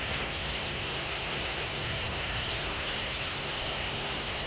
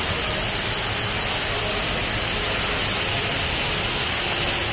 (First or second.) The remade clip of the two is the first